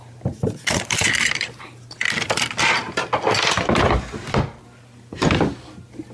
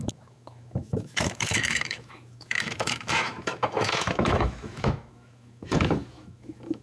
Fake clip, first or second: second